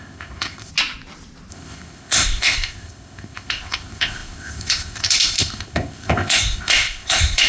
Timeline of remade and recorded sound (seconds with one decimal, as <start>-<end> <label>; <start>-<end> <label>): 0.0-0.7 remade; 0.7-1.5 recorded; 1.5-7.5 remade